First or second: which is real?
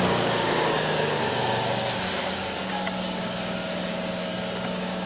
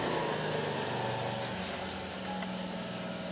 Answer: second